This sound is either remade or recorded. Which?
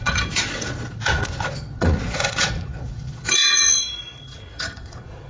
remade